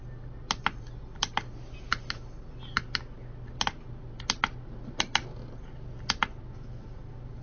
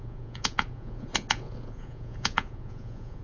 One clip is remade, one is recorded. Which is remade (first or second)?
second